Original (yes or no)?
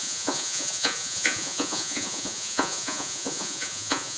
no